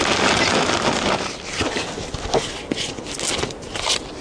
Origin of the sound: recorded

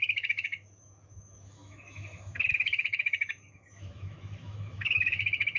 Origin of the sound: remade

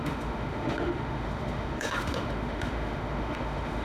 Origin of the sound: remade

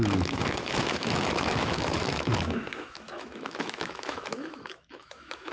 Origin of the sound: remade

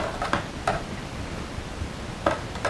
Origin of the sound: recorded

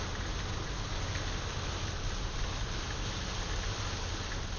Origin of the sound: recorded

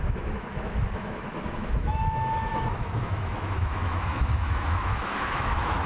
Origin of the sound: remade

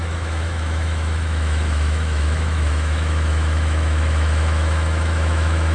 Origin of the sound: remade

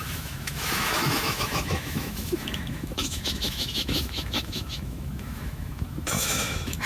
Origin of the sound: remade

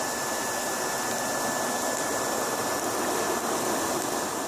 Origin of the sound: recorded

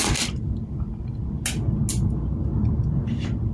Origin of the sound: recorded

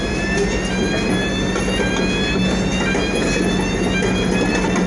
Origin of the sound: recorded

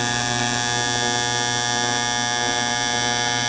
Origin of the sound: recorded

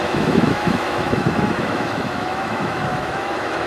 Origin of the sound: remade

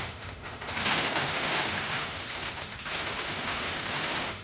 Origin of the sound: remade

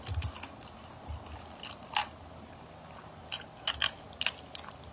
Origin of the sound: recorded